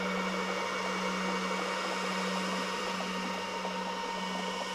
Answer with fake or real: real